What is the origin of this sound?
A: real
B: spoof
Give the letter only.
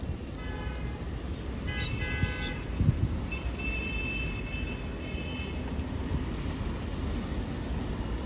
A